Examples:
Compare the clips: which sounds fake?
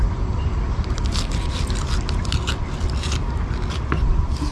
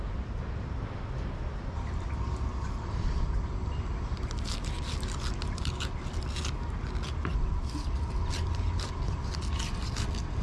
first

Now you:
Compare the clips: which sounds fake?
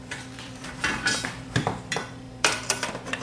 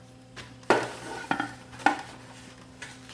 first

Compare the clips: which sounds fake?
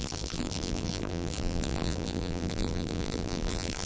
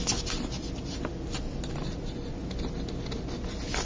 first